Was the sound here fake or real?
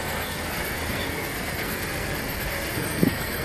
fake